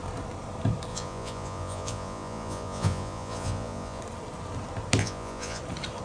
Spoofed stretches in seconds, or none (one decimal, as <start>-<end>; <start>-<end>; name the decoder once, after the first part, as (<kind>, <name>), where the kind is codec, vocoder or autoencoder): 0.9-4.0 (vocoder, Vocos); 5.0-5.6